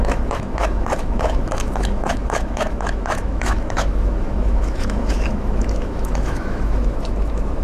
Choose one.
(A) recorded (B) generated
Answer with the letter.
B